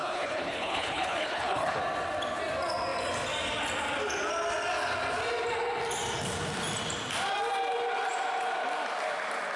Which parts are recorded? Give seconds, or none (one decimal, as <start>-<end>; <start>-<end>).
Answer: 1.8-9.6